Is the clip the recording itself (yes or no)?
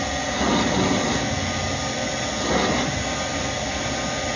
yes